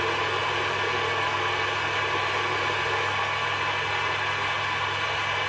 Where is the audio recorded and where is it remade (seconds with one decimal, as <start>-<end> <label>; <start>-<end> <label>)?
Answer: 0.0-5.5 recorded